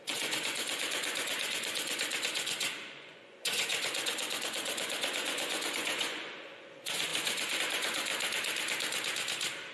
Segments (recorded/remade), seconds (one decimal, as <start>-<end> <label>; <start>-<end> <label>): 0.0-8.1 remade; 8.1-9.7 recorded